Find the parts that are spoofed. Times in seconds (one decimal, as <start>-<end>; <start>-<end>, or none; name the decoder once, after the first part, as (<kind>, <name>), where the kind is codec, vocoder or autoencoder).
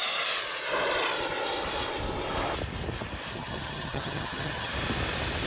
3.3-4.7 (vocoder, HiFi-GAN)